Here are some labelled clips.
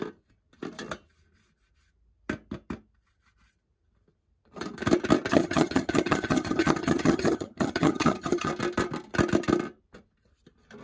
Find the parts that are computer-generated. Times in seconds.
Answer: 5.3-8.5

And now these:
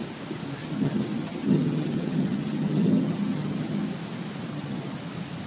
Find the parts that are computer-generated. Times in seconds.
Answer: 0.6-3.9; 4.5-5.0

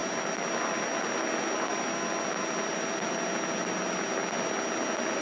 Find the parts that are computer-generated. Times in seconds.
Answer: none